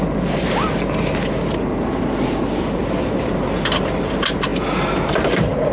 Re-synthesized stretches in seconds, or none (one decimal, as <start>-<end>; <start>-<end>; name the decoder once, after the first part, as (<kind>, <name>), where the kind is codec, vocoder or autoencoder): none